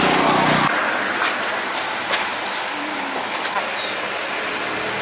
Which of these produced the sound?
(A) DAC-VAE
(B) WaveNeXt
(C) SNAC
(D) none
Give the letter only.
D